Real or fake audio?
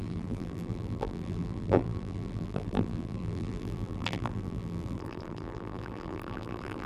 fake